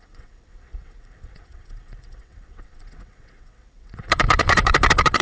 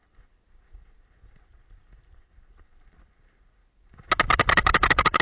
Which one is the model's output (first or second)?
first